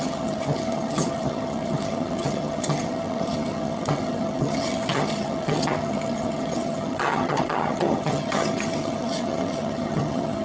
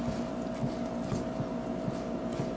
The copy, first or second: first